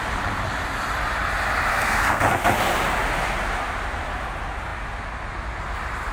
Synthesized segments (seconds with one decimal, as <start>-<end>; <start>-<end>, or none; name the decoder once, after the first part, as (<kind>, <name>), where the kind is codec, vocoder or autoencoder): 1.7-2.2 (codec, SNAC)